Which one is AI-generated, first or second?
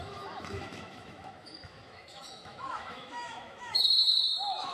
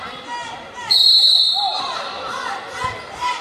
first